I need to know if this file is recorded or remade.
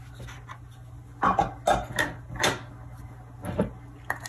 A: recorded